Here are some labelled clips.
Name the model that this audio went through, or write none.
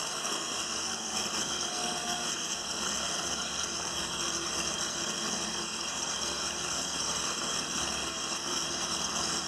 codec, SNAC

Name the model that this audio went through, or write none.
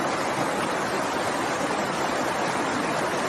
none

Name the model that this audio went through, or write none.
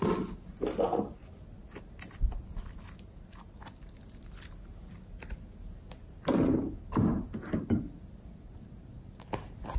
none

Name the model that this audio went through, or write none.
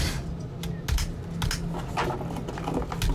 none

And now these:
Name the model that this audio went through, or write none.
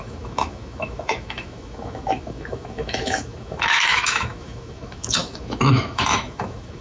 autoencoder, DAC-VAE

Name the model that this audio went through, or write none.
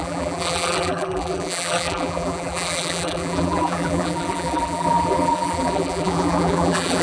vocoder, BigVGAN v2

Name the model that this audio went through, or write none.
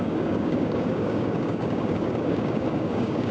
codec, DAC